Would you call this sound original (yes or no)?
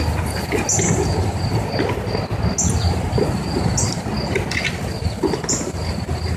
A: yes